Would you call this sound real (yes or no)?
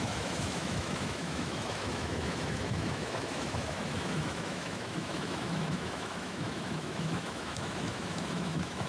no